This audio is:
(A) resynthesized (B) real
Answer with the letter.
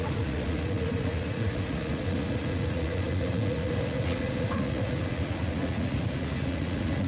A